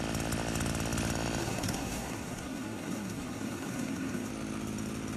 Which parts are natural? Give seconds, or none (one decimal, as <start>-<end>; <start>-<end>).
0.0-1.4; 4.3-5.2